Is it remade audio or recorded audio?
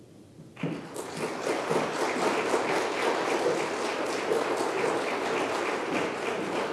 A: recorded